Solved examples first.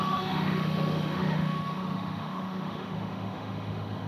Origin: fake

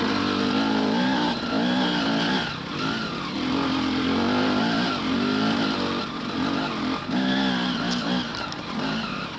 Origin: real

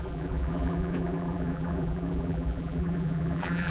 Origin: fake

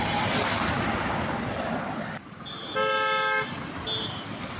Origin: real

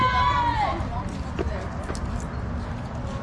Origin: real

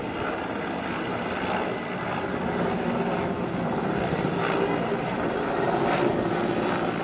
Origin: real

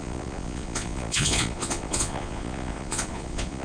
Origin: fake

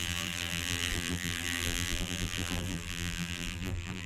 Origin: fake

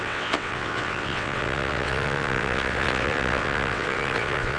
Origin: fake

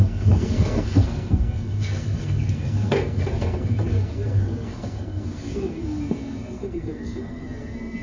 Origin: fake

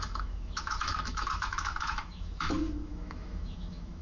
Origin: fake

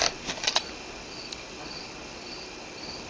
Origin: real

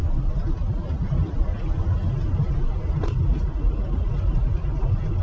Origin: real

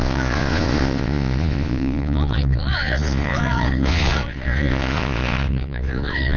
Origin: fake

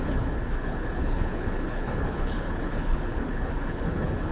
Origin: fake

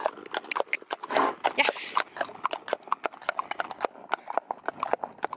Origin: real